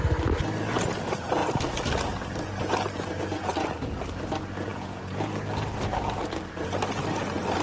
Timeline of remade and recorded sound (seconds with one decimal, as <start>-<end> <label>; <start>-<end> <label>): 0.0-4.7 recorded; 4.7-5.5 remade; 5.5-7.6 recorded